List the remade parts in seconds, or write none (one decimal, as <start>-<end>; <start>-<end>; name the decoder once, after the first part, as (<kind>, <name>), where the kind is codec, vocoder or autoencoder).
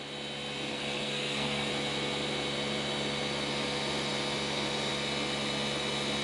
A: 0.7-1.7 (codec, SNAC)